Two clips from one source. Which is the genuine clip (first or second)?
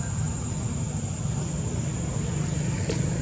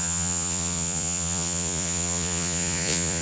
first